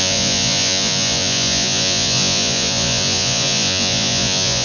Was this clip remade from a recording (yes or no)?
yes